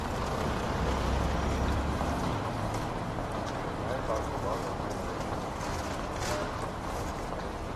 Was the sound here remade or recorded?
recorded